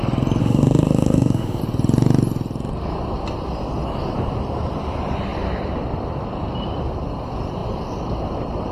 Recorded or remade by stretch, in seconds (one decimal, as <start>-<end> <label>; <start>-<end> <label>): 0.0-0.4 recorded; 0.4-1.6 remade; 1.6-8.7 recorded